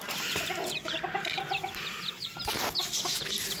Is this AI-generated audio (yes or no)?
no